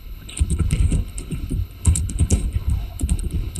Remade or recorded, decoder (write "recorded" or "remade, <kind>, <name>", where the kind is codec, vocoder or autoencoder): remade, codec, HILCodec